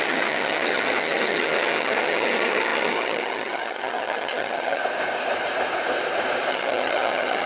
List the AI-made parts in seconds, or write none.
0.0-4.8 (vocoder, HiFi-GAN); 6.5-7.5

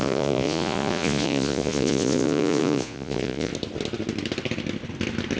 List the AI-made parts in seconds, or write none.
0.0-3.5 (vocoder, Vocos)

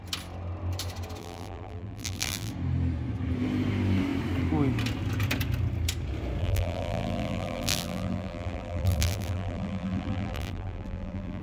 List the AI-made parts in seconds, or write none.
1.2-2.5 (vocoder, BigVGAN v2); 6.4-11.4

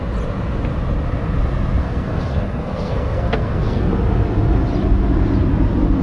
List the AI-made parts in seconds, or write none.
1.8-3.9 (codec, SNAC)

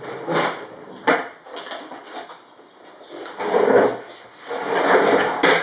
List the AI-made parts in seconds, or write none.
none